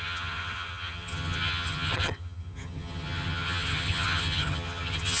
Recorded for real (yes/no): no